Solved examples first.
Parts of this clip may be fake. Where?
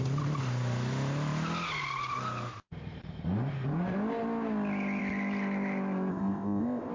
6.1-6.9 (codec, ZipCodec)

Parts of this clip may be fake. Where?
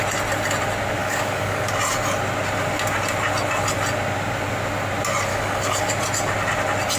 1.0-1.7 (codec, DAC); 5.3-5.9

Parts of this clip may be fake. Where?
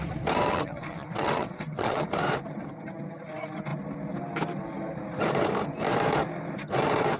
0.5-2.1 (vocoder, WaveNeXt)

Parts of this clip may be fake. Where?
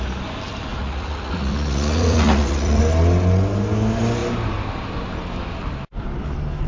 0.7-2.8 (vocoder, Vocos)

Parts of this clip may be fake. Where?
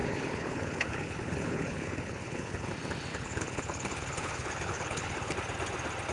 0.0-2.7 (codec, HILCodec); 3.1-5.3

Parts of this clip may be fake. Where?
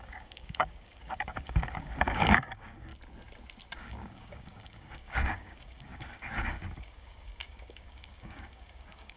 0.0-2.9 (codec, DAC); 3.8-9.2